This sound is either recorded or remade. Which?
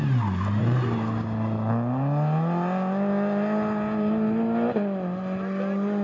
recorded